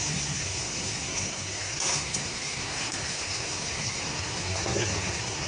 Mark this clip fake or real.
fake